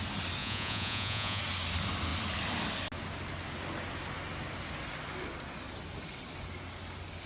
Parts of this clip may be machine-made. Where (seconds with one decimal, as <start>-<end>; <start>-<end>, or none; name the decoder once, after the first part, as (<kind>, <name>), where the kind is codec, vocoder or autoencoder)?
0.4-1.4 (vocoder, Vocos)